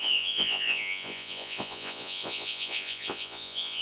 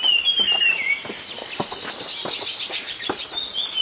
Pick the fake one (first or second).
first